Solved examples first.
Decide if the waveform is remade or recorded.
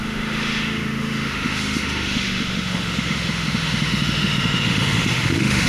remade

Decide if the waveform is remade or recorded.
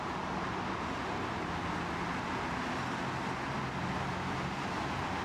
recorded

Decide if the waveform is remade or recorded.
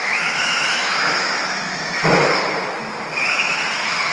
remade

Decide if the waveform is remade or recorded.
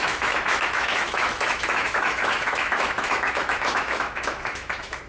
remade